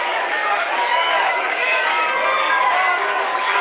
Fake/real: fake